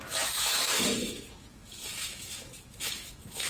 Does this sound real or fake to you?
fake